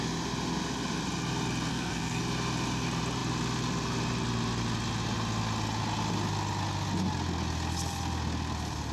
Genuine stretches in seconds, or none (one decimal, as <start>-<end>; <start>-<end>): 0.0-1.7; 2.2-8.9